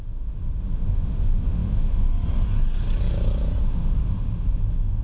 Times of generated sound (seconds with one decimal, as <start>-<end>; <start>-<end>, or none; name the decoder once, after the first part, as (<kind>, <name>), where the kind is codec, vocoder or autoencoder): 0.0-2.1 (autoencoder, DAC-VAE); 3.6-5.0